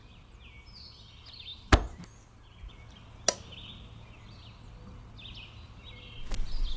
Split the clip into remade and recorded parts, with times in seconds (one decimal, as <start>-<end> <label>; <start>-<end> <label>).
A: 0.0-6.8 recorded